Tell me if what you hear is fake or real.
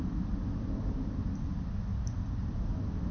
real